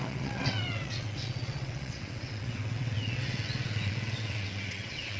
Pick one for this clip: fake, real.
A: fake